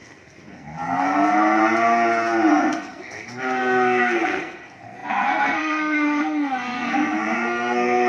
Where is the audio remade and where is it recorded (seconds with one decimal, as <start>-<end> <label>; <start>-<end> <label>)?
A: 0.0-1.6 remade; 1.6-2.5 recorded; 2.5-8.1 remade